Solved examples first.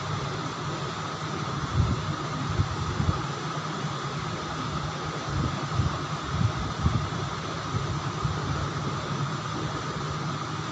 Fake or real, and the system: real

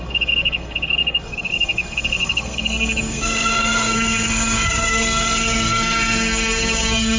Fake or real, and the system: fake, codec, SNAC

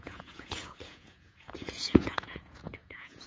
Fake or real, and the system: fake, vocoder, Vocos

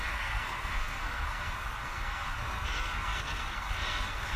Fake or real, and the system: fake, codec, SNAC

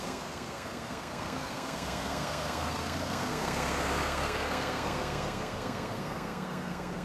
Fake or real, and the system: fake, codec, SNAC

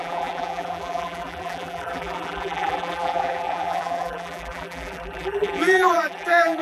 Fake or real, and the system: fake, vocoder, BigVGAN v2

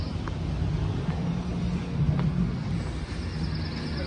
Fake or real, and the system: real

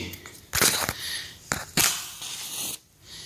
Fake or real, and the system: real